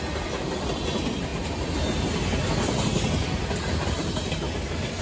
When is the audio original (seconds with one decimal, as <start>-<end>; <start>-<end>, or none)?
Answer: 0.0-5.0